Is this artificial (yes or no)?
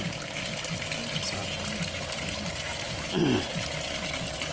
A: no